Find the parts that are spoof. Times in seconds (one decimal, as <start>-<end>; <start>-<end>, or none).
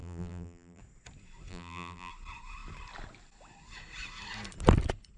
0.0-0.8; 1.5-2.1